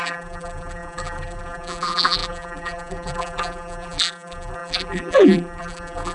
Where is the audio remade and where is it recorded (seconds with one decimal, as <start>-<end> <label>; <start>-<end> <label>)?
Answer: 0.0-6.1 remade

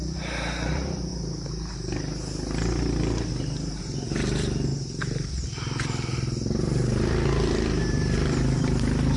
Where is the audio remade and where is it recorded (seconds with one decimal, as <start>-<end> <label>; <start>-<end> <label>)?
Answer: 0.0-1.1 remade; 1.1-3.8 recorded; 3.8-9.2 remade

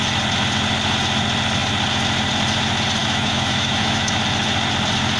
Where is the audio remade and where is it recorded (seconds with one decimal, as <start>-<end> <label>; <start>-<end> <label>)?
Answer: 0.0-3.0 recorded; 3.0-4.2 remade; 4.2-5.2 recorded

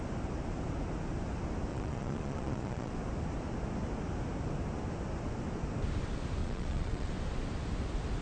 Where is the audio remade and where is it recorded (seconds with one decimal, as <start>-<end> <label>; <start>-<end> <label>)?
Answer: 0.0-1.7 recorded; 1.7-2.9 remade; 2.9-6.4 recorded; 6.4-7.1 remade; 7.1-8.2 recorded

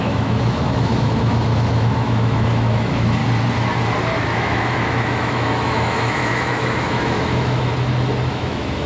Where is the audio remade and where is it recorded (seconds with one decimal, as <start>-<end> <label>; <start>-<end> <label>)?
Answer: 0.0-3.2 remade; 3.2-4.2 recorded; 4.2-7.7 remade; 7.7-8.3 recorded; 8.3-8.9 remade

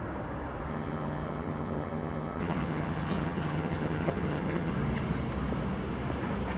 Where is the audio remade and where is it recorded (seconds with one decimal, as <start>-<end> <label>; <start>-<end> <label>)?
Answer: 0.0-0.7 recorded; 0.7-4.7 remade; 4.7-6.6 recorded